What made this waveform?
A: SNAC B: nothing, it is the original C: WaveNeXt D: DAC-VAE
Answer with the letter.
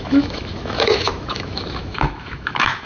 D